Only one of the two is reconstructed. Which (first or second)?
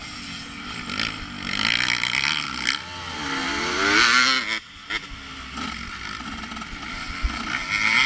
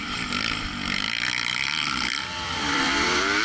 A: second